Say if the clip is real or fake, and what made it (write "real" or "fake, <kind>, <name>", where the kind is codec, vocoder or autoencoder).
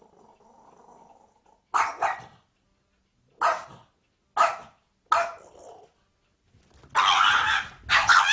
real